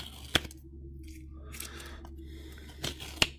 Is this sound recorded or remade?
recorded